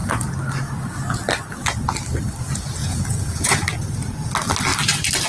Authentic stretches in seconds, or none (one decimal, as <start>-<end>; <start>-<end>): 0.0-2.8; 3.6-5.3